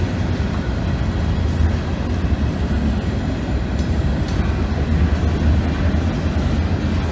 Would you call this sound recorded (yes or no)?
yes